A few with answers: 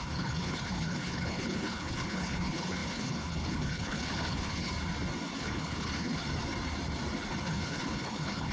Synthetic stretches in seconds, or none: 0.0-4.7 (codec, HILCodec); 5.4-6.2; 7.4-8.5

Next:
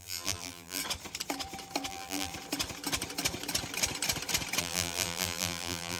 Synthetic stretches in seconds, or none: 0.0-0.8 (vocoder, BigVGAN v2); 1.9-2.3; 4.6-6.0

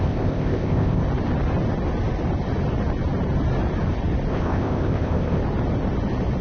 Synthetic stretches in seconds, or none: 0.0-1.0 (codec, ZipCodec); 4.3-5.4

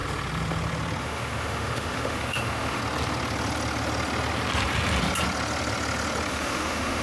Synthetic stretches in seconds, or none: 1.0-2.8 (autoencoder, DAC-VAE); 6.3-7.0

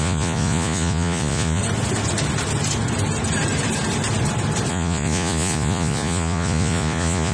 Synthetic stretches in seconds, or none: 0.0-1.6 (vocoder, Vocos); 4.7-7.3

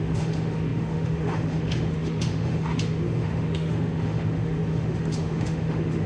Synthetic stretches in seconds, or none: 0.0-6.1 (autoencoder, DAC-VAE)